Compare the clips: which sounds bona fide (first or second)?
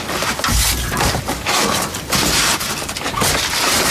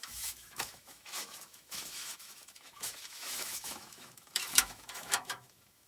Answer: first